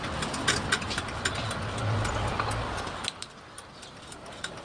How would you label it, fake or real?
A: real